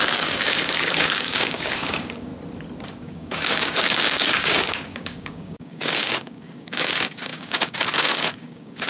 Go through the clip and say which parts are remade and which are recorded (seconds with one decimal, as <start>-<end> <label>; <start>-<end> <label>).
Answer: 0.0-2.3 remade; 2.3-3.0 recorded; 3.0-8.9 remade